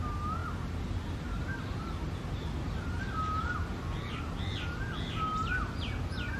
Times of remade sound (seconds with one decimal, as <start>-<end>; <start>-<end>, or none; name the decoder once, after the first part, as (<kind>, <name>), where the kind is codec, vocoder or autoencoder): none